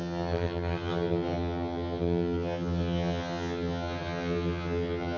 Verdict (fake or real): fake